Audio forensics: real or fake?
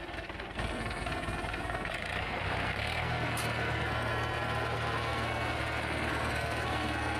fake